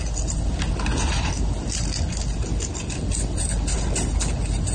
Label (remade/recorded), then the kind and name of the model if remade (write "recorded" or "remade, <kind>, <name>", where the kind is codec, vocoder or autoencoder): recorded